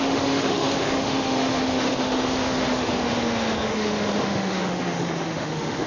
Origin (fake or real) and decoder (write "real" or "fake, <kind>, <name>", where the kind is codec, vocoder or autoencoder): fake, autoencoder, DAC-VAE